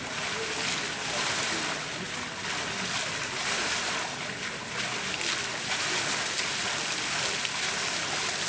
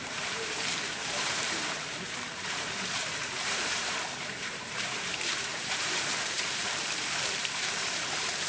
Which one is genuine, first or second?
first